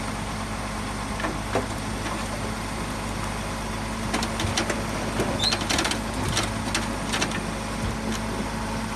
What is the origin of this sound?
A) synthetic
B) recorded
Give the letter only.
B